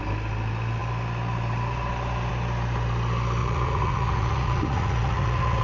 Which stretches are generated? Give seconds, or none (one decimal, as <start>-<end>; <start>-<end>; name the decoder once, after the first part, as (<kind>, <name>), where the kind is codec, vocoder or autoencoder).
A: 3.4-5.6 (vocoder, Vocos)